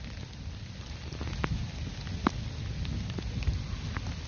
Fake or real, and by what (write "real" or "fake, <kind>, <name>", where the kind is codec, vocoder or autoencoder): real